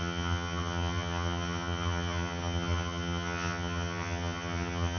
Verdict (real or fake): fake